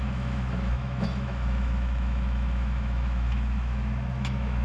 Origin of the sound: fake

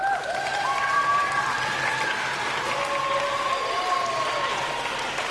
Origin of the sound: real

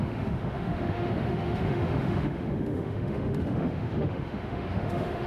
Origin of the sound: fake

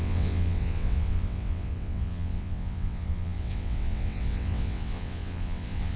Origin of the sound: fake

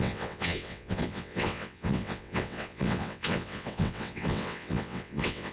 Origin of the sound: fake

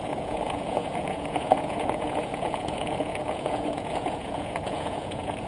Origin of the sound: fake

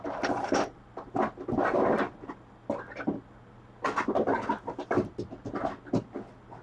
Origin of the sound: real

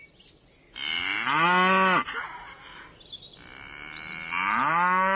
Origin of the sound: real